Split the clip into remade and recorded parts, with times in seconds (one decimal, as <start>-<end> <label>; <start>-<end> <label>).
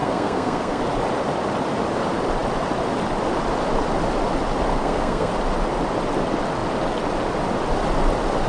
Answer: 0.0-0.8 remade; 0.8-4.7 recorded; 4.7-5.3 remade; 5.3-8.5 recorded